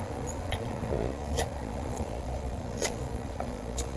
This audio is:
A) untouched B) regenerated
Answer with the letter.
B